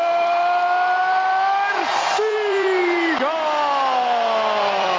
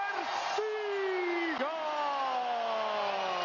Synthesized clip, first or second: first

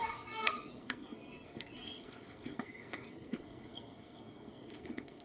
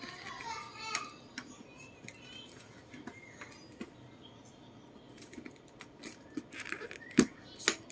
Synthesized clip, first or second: first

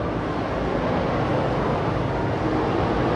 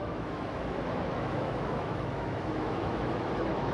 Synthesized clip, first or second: second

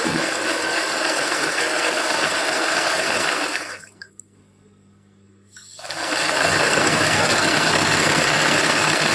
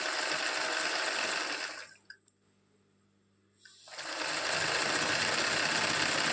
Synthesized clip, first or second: first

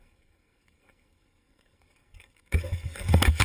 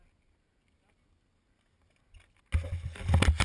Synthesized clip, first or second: first